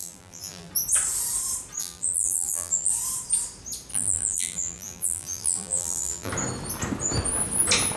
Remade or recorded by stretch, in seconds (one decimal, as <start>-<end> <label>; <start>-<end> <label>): 0.0-0.7 remade; 0.7-1.8 recorded; 1.8-2.9 remade; 2.9-3.9 recorded; 3.9-6.3 remade; 6.3-8.0 recorded